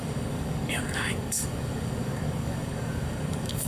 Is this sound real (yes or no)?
no